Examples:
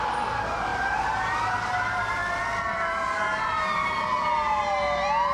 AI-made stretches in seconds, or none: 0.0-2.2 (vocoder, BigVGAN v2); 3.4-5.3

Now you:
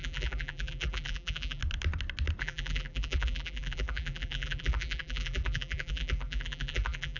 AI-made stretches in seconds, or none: 0.0-1.6 (vocoder, BigVGAN v2); 2.4-7.2

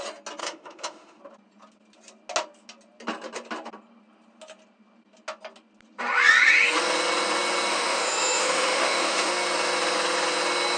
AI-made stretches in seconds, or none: 0.4-1.2 (autoencoder, DAC-VAE); 7.7-9.3

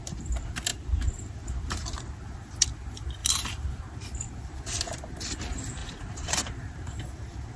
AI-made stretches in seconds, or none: 3.2-3.7 (vocoder, BigVGAN v2); 5.8-7.6

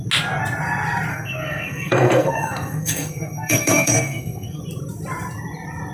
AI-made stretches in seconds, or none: 1.1-4.6 (codec, SNAC)

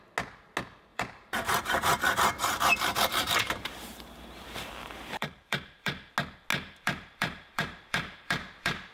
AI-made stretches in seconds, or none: 0.9-6.1 (vocoder, BigVGAN v2); 6.5-8.9

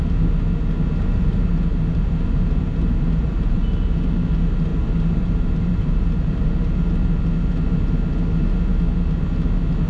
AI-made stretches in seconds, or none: 1.0-1.5 (vocoder, BigVGAN v2); 1.9-3.6; 4.7-6.5

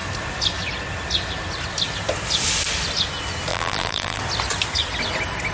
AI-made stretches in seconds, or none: 3.5-4.2 (vocoder, BigVGAN v2)